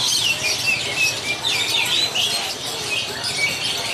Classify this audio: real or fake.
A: real